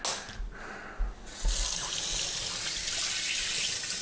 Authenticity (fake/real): real